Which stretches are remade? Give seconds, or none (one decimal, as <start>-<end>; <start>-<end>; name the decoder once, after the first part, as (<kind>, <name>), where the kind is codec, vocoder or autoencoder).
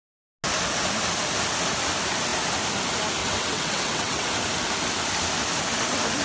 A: 3.2-4.3 (vocoder, WaveNeXt)